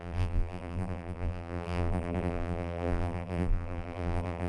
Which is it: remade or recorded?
remade